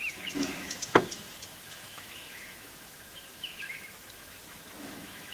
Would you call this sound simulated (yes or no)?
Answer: yes